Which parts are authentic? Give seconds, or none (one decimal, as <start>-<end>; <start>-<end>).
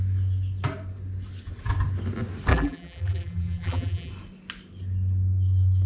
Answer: 0.0-2.5; 4.1-5.9